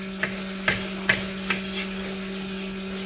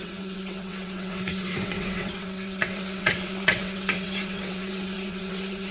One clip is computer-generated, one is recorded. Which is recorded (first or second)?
first